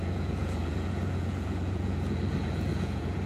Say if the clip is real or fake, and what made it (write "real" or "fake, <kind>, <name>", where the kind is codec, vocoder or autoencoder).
fake, vocoder, Vocos